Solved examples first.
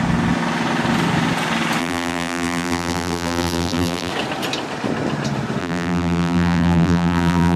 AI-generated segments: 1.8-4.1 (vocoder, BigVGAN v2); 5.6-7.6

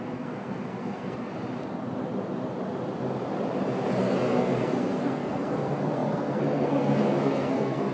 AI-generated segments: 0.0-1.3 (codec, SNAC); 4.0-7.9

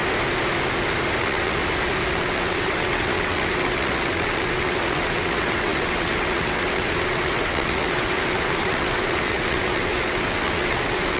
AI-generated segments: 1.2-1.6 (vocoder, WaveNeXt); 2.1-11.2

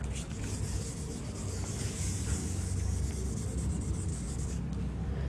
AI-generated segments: 1.4-2.0 (codec, DAC); 2.4-3.1; 4.1-4.6

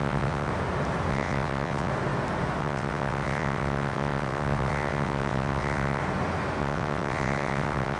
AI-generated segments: 0.0-0.5 (vocoder, WaveNeXt); 1.1-1.9; 2.6-6.0; 6.6-8.0

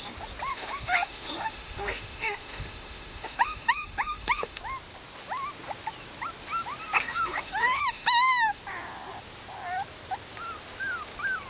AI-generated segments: 0.5-4.6 (autoencoder, DAC-VAE); 7.0-8.6